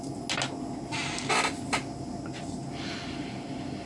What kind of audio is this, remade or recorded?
recorded